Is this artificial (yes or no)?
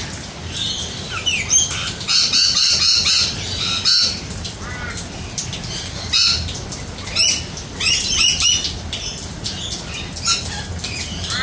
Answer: no